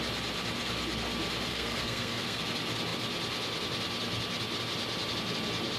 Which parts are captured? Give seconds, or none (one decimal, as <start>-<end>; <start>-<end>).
0.0-1.5; 2.4-5.8